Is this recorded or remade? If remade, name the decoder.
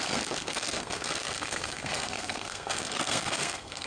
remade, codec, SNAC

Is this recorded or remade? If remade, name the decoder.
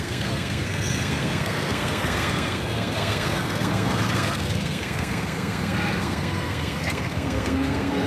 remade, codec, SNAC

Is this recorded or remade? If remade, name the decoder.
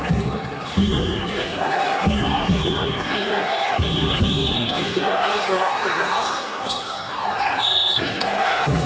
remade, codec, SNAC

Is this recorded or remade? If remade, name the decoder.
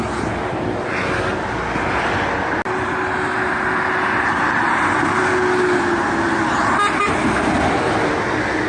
recorded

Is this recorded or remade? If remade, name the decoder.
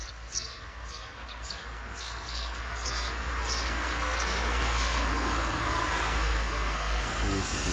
remade, codec, SNAC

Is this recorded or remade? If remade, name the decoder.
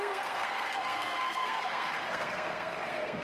remade, codec, SNAC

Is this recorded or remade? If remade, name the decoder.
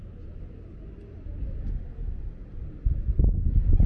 recorded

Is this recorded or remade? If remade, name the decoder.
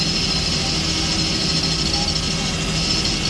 recorded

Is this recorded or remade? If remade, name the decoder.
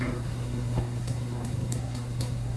remade, codec, SNAC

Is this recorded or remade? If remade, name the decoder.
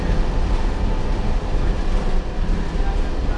recorded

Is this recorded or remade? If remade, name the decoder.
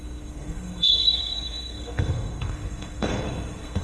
remade, codec, SNAC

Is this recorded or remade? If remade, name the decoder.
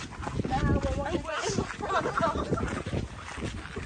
recorded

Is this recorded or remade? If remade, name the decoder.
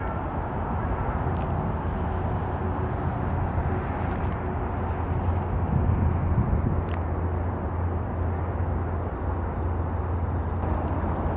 recorded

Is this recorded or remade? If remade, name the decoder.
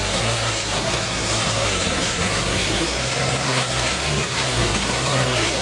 remade, codec, SNAC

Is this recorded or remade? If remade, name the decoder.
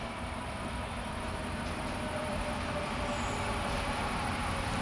recorded